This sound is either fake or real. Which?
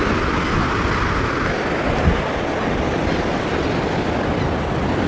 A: real